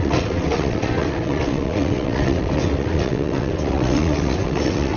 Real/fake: fake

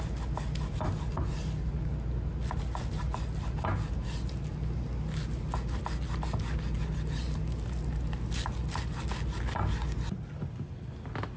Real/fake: real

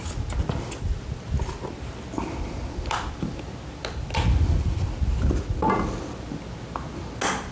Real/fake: real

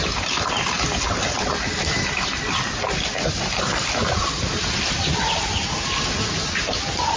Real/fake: real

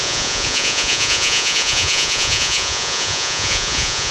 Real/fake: fake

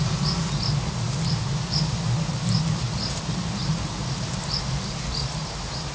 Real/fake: real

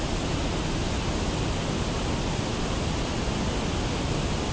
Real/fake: real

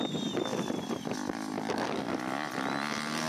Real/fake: real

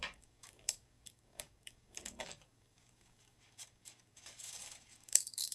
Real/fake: fake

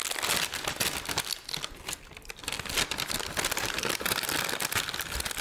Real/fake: real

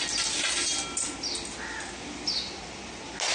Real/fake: real